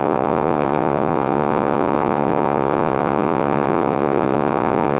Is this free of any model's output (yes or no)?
no